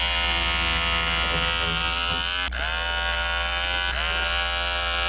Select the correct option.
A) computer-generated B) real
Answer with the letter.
B